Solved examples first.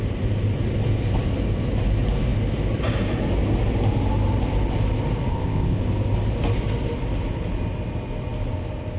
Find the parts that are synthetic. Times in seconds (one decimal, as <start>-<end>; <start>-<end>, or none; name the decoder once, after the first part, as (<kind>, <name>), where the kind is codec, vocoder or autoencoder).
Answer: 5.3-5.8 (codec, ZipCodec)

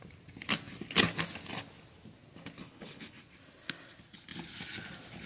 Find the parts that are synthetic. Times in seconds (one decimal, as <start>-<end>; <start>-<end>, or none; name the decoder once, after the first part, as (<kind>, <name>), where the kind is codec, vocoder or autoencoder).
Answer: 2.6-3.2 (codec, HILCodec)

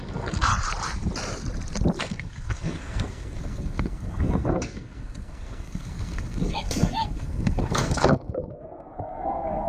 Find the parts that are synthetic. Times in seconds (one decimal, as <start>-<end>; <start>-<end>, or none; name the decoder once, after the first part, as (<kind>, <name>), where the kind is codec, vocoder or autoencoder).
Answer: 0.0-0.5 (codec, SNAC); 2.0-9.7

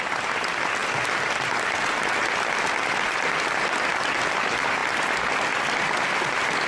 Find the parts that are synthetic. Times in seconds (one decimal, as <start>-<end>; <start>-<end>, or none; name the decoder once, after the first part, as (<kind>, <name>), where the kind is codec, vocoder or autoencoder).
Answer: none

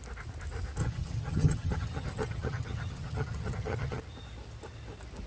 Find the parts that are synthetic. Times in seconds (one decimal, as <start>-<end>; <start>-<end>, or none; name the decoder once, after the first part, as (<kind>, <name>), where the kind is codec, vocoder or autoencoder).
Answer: 0.8-4.0 (vocoder, HiFi-GAN)

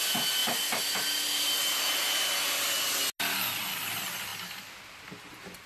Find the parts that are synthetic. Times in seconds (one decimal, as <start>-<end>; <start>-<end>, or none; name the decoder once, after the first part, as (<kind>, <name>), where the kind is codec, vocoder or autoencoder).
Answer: none

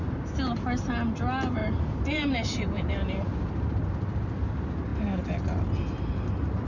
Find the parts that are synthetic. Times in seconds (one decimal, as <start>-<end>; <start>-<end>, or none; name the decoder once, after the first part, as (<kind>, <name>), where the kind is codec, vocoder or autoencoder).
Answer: 1.6-3.9 (vocoder, BigVGAN v2)

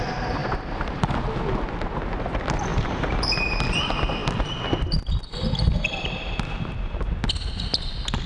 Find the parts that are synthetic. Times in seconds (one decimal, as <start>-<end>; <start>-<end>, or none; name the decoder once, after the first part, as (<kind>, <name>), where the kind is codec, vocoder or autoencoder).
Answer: 0.4-1.1 (vocoder, BigVGAN v2); 2.7-3.4